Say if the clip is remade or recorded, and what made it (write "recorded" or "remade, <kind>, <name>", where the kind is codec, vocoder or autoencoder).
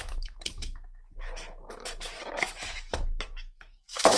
remade, autoencoder, DAC-VAE